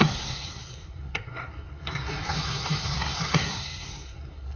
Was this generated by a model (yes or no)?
yes